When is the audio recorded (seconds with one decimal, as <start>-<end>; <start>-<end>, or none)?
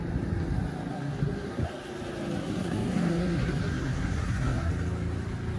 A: 0.0-0.9; 1.7-2.4; 4.7-5.6